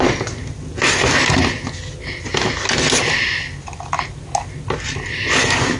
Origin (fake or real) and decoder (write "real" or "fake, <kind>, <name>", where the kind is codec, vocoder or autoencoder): real